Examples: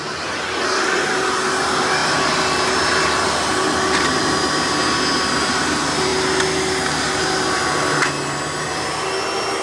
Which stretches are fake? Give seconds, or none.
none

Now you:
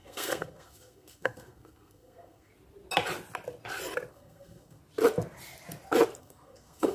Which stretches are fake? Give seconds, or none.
0.0-2.5 (codec, SNAC); 4.1-4.8; 6.2-6.9

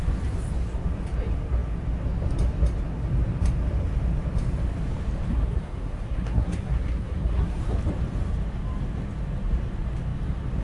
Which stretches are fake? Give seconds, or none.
5.3-7.6 (codec, SNAC)

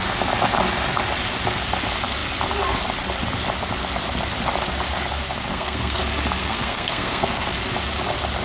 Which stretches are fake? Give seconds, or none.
5.5-6.0 (codec, SNAC); 6.4-7.6

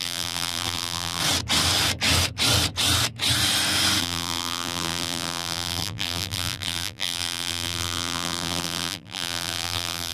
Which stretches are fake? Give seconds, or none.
0.0-1.2 (vocoder, BigVGAN v2); 4.0-10.1